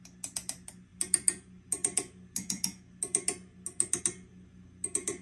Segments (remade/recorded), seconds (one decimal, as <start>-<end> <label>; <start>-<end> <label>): 0.0-5.2 recorded